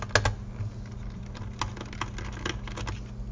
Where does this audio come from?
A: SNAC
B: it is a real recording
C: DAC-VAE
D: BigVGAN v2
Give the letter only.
B